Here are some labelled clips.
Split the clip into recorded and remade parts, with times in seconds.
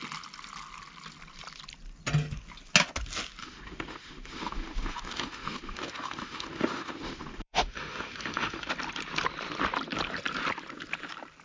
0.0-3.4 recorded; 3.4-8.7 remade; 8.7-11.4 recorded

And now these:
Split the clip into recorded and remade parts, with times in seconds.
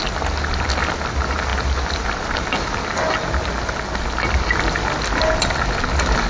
0.0-6.3 recorded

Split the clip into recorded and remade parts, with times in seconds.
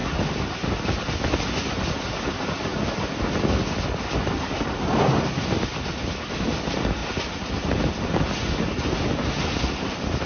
0.0-7.0 recorded; 7.0-8.3 remade; 8.3-10.3 recorded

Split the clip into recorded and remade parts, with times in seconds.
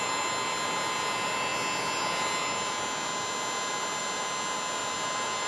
0.0-5.5 recorded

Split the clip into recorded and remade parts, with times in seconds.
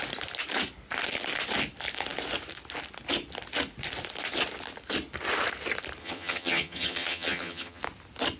0.0-6.0 recorded; 6.0-7.8 remade; 7.8-8.4 recorded